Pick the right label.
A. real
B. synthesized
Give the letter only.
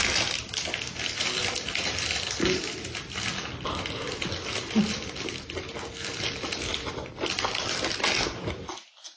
A